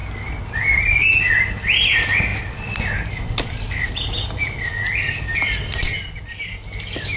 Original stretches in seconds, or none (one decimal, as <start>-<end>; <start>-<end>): 0.0-7.2